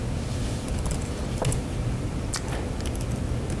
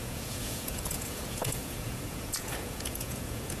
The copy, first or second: second